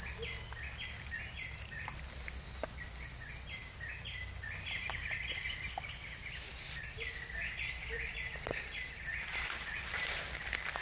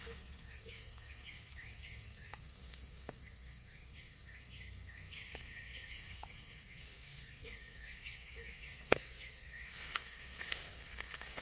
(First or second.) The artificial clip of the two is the second